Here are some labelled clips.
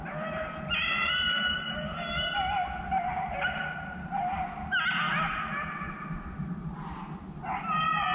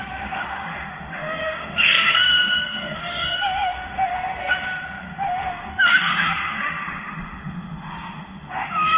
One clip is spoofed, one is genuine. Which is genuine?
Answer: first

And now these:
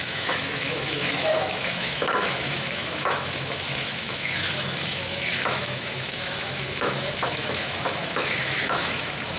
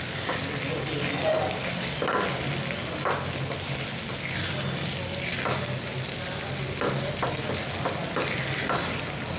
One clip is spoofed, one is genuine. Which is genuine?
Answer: second